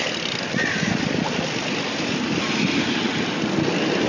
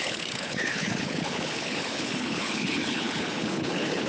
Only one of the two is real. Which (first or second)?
first